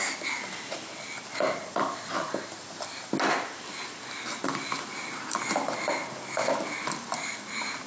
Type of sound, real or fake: real